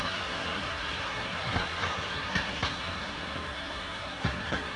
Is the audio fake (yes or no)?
yes